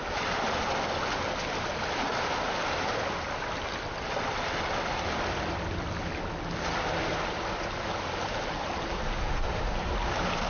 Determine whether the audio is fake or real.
real